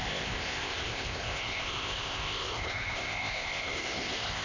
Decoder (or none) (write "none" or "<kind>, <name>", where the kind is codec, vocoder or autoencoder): codec, ZipCodec